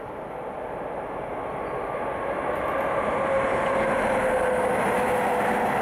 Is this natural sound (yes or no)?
yes